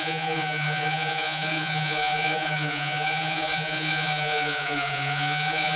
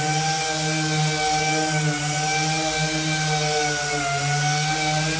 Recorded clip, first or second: second